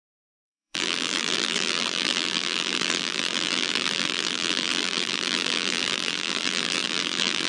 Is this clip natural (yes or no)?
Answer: no